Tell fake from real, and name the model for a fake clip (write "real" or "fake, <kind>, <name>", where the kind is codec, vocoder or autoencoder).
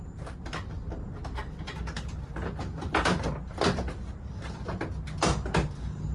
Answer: real